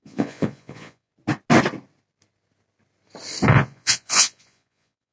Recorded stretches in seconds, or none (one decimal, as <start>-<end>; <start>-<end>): 1.1-3.5